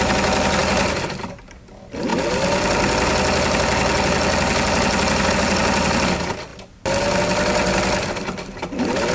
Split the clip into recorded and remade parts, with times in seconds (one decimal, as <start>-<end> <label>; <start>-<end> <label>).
0.0-9.1 recorded